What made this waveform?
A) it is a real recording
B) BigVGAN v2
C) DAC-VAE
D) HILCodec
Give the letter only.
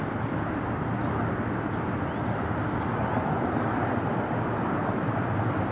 A